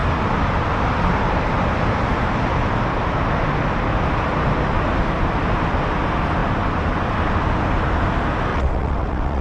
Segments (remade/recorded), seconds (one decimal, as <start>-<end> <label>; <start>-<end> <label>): 0.0-8.5 recorded; 8.5-9.4 remade